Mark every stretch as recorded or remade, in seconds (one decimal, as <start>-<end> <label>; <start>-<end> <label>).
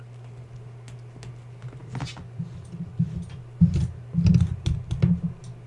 0.0-5.7 recorded